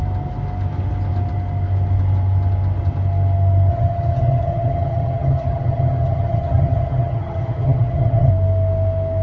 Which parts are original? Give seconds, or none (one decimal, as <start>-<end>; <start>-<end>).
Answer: 0.0-3.7; 8.3-9.2